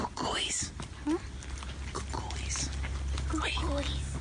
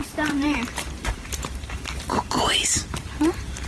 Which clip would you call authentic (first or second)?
first